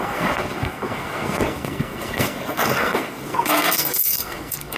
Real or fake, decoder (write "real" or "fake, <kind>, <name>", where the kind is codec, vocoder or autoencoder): fake, codec, SNAC